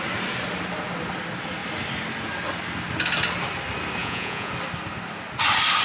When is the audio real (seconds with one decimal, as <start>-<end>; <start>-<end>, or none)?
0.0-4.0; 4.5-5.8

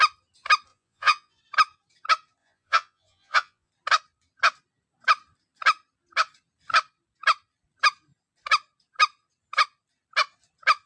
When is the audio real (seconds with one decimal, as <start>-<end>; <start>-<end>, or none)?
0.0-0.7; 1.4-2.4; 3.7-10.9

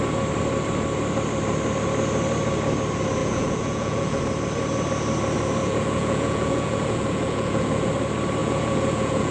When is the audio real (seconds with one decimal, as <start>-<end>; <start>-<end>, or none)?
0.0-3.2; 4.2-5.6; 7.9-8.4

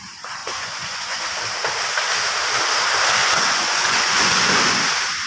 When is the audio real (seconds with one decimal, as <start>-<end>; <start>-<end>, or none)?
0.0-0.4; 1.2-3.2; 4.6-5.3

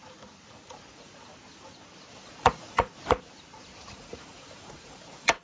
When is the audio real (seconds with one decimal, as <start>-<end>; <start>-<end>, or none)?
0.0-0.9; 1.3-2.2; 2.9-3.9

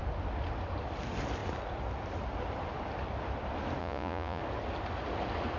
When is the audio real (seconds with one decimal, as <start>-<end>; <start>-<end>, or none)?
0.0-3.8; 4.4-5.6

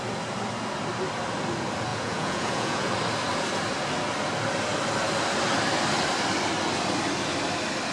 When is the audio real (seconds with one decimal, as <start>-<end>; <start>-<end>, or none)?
0.0-1.9; 2.9-7.9

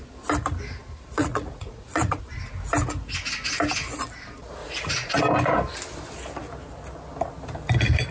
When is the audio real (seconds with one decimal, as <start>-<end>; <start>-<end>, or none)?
0.0-0.8; 2.2-4.6; 5.2-8.1